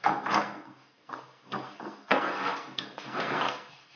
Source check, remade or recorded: remade